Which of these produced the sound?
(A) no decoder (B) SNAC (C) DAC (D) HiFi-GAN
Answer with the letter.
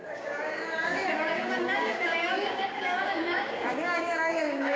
C